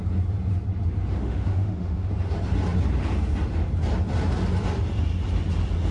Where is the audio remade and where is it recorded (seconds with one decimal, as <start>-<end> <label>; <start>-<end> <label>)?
0.0-1.2 recorded; 1.2-2.1 remade; 2.1-5.9 recorded